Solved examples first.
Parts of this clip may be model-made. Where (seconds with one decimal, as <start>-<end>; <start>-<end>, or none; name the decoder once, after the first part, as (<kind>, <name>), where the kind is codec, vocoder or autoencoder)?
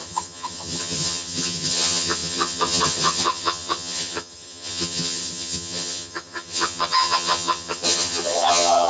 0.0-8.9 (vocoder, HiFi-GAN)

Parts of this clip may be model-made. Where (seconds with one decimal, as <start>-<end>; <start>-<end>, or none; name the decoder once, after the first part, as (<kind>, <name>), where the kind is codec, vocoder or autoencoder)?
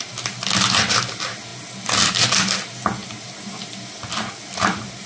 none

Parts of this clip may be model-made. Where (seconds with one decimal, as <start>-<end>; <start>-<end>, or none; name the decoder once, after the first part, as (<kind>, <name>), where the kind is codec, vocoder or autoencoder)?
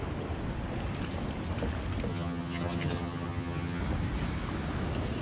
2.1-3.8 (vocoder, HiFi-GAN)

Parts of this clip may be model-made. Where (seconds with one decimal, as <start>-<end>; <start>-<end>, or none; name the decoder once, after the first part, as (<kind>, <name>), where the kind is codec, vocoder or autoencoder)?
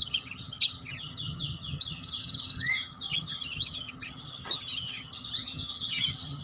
0.0-6.4 (vocoder, HiFi-GAN)